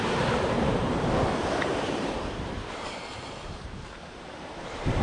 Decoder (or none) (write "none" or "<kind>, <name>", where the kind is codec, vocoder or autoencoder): vocoder, BigVGAN v2